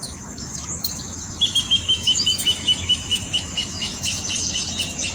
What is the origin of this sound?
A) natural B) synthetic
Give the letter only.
B